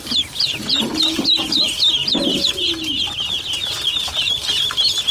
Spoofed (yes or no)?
no